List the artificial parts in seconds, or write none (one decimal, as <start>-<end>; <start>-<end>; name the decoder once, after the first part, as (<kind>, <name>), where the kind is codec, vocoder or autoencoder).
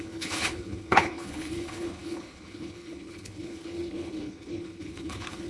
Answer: 0.0-5.5 (codec, HILCodec)